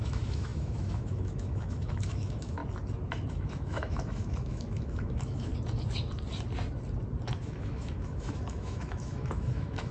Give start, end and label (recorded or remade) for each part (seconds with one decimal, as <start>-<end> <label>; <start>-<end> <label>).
0.0-2.6 remade; 2.6-3.3 recorded; 3.3-5.5 remade; 5.5-7.4 recorded; 7.4-9.9 remade